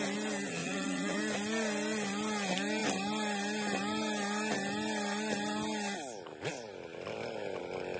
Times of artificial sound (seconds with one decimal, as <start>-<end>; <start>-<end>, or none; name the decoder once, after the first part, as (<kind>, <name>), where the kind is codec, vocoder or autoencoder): 0.6-1.2 (vocoder, Vocos)

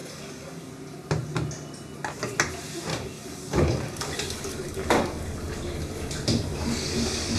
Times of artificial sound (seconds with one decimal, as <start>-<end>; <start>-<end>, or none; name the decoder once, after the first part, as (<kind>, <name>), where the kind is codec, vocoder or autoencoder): 0.0-0.7 (codec, DAC); 2.9-6.1; 6.5-7.4